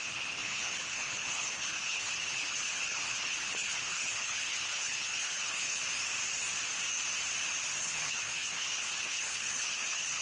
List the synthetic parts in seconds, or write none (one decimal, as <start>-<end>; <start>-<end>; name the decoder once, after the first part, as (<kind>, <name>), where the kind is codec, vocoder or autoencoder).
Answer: 0.0-5.8 (codec, HILCodec); 7.8-10.2